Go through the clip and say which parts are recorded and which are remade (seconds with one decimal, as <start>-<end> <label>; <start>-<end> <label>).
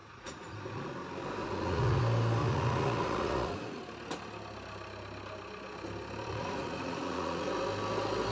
0.0-0.9 remade; 0.9-1.4 recorded; 1.4-2.0 remade; 2.0-2.4 recorded; 2.4-3.8 remade; 3.8-6.3 recorded; 6.3-7.5 remade; 7.5-8.3 recorded